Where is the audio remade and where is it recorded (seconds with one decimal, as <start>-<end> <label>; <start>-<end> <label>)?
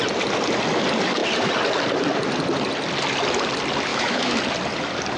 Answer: 0.0-3.9 recorded; 3.9-4.4 remade; 4.4-5.2 recorded